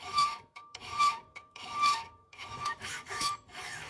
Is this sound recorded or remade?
remade